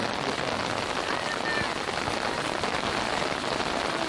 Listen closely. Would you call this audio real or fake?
real